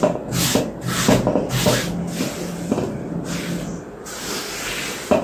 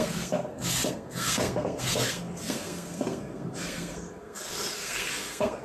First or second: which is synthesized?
second